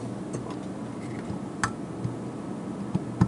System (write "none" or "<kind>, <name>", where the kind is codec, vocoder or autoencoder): none